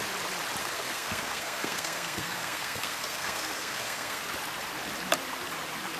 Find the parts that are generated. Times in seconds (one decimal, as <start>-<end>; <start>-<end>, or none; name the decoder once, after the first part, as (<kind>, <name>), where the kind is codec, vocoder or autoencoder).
0.6-4.2 (codec, SNAC)